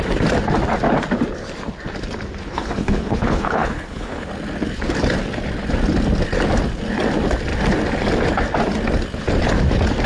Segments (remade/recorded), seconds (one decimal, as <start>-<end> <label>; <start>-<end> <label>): 0.0-2.4 recorded; 2.4-4.3 remade; 4.3-10.1 recorded